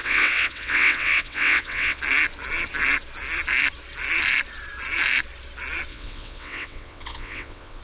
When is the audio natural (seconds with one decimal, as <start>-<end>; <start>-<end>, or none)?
2.0-5.9